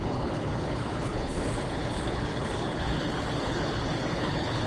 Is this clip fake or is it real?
fake